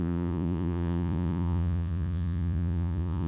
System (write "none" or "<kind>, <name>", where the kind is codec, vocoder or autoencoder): vocoder, Vocos